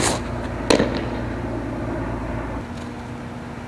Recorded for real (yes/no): yes